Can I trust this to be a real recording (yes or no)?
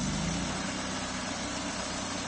yes